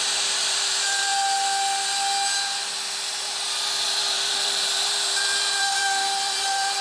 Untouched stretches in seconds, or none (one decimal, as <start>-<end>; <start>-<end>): 1.1-4.0